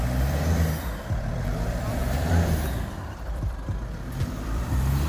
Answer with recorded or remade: remade